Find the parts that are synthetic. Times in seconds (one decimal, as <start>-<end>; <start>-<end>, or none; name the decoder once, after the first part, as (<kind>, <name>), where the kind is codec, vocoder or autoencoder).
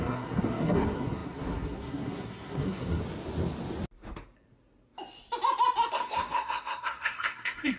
0.0-3.0 (codec, SNAC); 5.9-7.8